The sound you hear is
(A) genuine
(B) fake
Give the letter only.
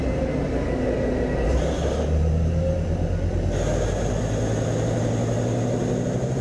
A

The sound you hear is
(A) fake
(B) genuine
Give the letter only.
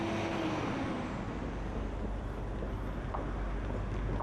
B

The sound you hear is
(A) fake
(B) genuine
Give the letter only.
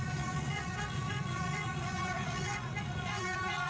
A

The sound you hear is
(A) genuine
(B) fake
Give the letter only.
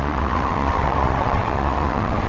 B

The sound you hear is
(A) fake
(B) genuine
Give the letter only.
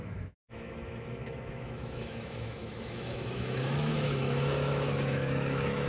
A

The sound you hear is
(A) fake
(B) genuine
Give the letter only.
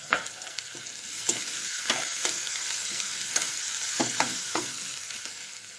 A